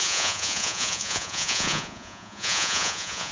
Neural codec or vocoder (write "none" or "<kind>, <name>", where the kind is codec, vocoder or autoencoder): vocoder, Vocos